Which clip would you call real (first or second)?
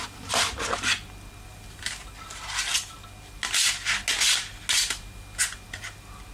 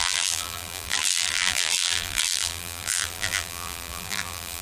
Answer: first